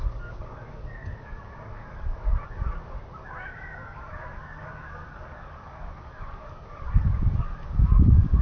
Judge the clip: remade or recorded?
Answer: remade